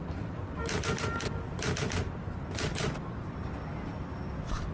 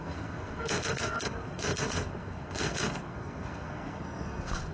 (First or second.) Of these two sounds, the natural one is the first